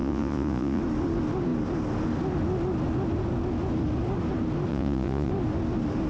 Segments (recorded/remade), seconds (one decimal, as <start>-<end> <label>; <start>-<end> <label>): 0.0-0.8 remade; 0.8-4.7 recorded; 4.7-5.3 remade; 5.3-6.1 recorded